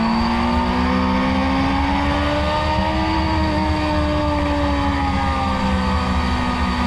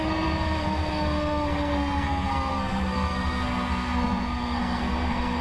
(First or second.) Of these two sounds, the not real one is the second